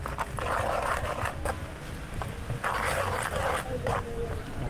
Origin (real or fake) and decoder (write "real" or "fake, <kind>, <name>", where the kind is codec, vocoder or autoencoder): real